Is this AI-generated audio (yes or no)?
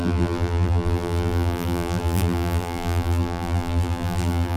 yes